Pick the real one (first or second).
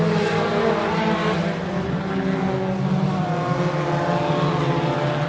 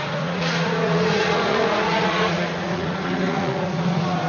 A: first